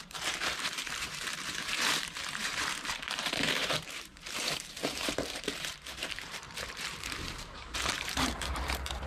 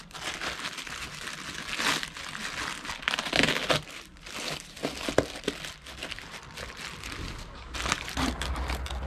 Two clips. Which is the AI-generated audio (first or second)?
first